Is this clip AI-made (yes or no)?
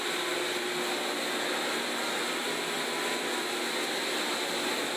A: no